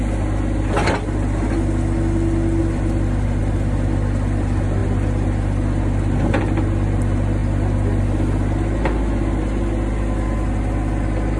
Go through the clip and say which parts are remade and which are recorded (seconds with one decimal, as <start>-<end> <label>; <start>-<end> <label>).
0.0-2.6 recorded; 2.6-3.4 remade; 3.4-11.4 recorded